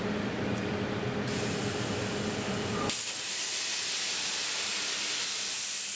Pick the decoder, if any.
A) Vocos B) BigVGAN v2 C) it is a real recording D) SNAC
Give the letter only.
C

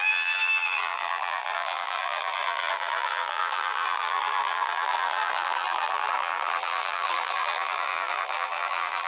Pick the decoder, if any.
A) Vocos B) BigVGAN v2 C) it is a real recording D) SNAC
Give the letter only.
B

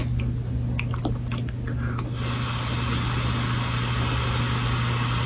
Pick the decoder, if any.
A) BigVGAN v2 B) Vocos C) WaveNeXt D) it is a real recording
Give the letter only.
D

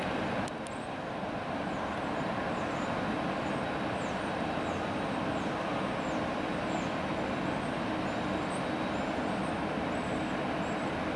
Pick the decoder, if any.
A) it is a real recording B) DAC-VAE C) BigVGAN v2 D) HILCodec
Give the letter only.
A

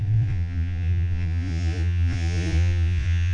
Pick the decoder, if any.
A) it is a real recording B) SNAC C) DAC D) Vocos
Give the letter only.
D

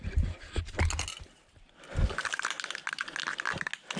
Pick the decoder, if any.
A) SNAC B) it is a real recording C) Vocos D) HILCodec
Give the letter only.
B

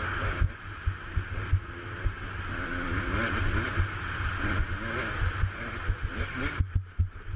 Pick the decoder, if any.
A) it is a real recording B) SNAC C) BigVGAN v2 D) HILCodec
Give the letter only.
A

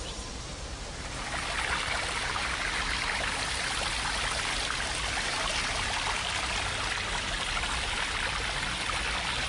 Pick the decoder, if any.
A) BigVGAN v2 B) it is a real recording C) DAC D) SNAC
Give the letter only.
B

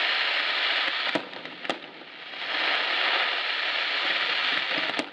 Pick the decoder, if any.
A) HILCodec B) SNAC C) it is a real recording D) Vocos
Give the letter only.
C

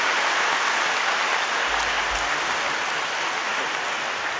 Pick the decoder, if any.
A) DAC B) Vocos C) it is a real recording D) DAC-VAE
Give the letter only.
C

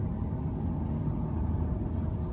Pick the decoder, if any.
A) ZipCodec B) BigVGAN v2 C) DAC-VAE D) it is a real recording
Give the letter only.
D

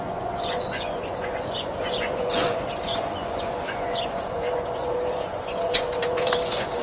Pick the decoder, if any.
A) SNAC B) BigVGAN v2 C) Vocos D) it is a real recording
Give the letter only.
C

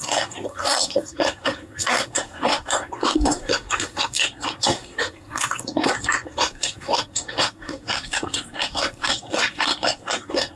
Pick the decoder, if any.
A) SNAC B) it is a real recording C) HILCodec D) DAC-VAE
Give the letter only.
A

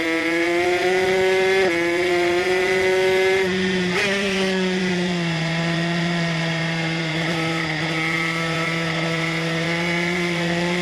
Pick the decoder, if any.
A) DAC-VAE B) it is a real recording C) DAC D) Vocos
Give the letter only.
D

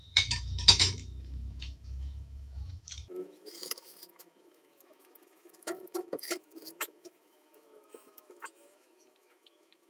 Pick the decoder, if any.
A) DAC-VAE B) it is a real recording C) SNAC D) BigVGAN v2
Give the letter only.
A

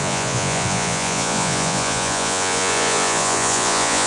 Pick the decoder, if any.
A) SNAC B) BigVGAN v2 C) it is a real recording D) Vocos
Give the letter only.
D